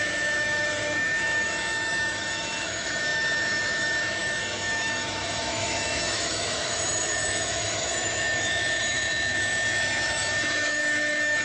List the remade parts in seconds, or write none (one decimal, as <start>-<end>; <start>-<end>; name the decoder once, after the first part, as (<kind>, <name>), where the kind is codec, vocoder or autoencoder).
0.0-11.4 (autoencoder, DAC-VAE)